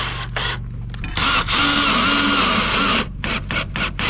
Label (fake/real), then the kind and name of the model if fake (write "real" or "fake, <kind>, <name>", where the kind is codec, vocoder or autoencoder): real